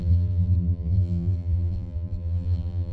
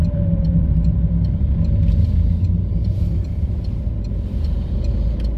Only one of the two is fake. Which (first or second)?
first